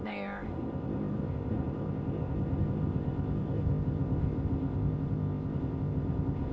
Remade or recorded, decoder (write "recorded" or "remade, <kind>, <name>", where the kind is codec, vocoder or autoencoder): remade, codec, ZipCodec